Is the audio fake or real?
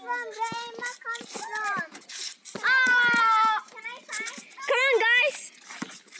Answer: real